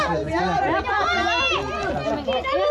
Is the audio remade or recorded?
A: recorded